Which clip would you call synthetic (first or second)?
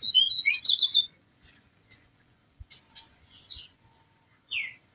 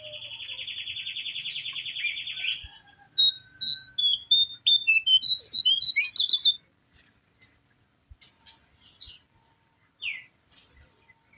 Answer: first